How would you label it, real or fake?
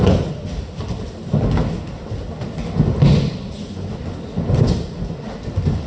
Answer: real